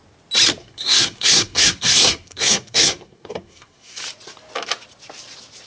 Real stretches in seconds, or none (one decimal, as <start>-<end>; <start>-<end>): 0.0-0.6; 4.0-5.7